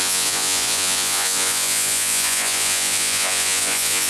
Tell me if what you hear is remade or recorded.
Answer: remade